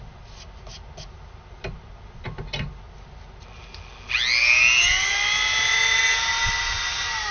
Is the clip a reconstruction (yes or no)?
no